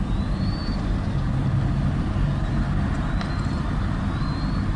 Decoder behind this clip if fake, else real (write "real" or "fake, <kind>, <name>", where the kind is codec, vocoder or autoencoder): real